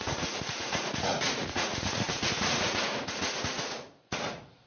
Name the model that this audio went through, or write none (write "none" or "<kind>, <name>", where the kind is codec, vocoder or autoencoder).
vocoder, Vocos